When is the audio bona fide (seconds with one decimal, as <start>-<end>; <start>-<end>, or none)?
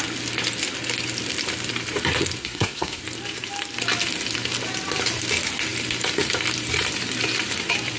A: 0.0-2.4; 3.0-8.0